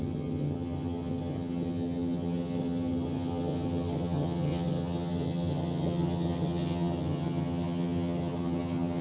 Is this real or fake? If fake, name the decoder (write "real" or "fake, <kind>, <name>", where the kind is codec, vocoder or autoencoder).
fake, vocoder, HiFi-GAN